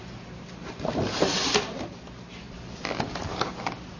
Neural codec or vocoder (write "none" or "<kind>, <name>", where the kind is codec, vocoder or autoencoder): none